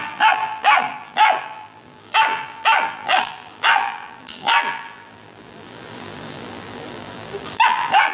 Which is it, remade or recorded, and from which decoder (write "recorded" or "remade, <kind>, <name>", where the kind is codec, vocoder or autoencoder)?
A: remade, vocoder, BigVGAN v2